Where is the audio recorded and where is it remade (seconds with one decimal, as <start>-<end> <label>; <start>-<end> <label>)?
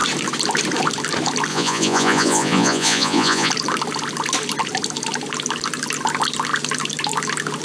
0.0-1.5 recorded; 1.5-3.5 remade; 3.5-7.6 recorded